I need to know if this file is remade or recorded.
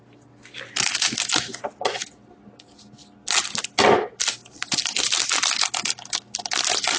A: recorded